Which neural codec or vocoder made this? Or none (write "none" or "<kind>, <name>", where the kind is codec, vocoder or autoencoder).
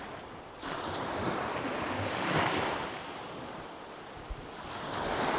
none